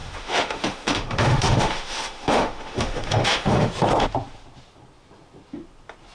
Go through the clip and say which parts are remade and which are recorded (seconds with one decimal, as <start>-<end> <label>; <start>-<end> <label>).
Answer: 0.0-3.7 remade; 3.7-6.1 recorded